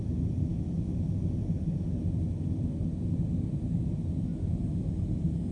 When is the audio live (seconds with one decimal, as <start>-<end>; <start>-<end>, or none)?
0.0-0.5; 1.1-5.5